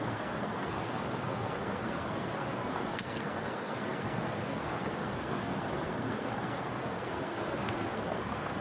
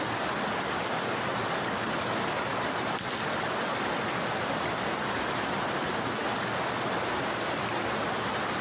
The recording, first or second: second